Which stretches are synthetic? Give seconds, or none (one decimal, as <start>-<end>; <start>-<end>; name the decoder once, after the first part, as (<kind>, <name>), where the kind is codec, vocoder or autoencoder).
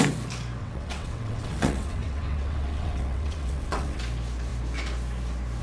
0.6-4.0 (vocoder, WaveNeXt)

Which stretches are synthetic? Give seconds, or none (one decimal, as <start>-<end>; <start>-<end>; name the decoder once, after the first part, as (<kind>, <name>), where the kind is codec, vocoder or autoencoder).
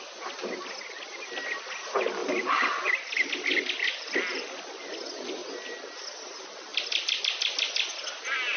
none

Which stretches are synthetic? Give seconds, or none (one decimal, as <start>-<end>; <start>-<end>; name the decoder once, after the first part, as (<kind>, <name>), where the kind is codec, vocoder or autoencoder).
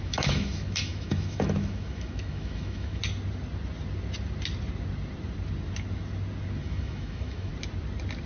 0.0-3.0 (autoencoder, DAC-VAE); 6.6-7.5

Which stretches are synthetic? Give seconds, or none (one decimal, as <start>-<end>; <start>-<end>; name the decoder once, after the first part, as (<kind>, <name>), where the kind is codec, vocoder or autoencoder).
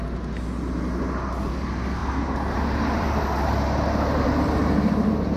2.0-5.4 (vocoder, BigVGAN v2)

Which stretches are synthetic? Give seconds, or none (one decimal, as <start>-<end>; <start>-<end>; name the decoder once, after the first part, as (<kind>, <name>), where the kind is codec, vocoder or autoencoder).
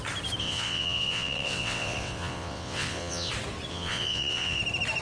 0.4-3.3 (vocoder, WaveNeXt); 3.7-4.6